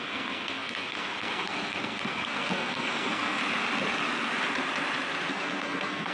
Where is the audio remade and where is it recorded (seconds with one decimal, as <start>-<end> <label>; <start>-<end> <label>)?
0.0-3.4 remade; 3.4-5.3 recorded; 5.3-6.1 remade